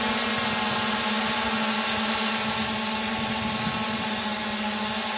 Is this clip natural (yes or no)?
yes